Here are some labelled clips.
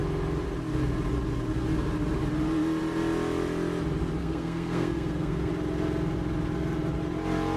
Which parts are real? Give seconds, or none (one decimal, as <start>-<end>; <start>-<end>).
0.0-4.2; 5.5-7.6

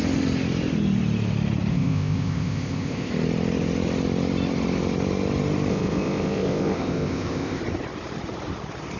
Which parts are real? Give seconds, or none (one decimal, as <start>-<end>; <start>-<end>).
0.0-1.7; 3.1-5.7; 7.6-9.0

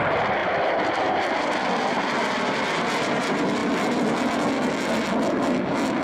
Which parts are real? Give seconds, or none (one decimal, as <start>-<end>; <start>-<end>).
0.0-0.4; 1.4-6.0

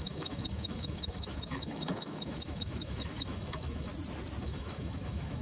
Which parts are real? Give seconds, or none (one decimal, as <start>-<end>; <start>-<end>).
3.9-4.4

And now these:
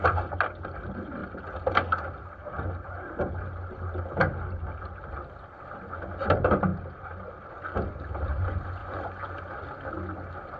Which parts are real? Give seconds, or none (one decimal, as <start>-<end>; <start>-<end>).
0.0-8.8; 9.3-10.6